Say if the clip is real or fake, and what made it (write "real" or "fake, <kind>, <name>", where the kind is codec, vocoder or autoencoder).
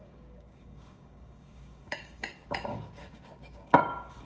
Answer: fake, codec, DAC